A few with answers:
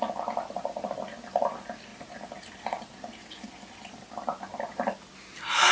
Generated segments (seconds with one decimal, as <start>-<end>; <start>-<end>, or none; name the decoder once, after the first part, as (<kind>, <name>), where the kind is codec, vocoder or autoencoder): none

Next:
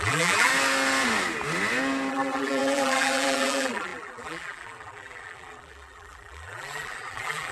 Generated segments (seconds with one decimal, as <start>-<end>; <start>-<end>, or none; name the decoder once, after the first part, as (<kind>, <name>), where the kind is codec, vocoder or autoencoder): 0.0-0.5 (vocoder, BigVGAN v2); 2.1-7.5

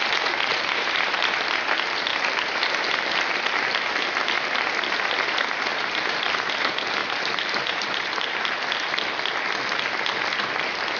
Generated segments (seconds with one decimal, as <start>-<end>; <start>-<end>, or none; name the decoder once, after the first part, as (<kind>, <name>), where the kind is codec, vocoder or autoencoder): 0.5-1.1 (vocoder, BigVGAN v2); 2.1-2.6; 5.7-6.5; 7.0-8.4

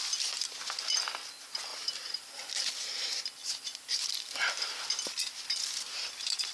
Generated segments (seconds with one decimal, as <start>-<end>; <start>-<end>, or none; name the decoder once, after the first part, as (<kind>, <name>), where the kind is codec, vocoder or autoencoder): 1.7-2.6 (vocoder, BigVGAN v2); 3.4-4.8

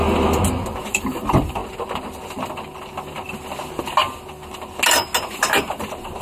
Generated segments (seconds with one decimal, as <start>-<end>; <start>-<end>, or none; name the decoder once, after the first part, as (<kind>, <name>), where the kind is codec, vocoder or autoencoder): 0.8-1.6 (vocoder, BigVGAN v2); 5.2-6.2